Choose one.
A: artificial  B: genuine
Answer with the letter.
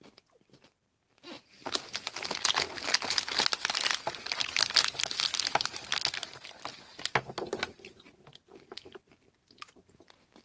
B